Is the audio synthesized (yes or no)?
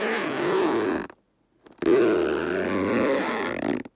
no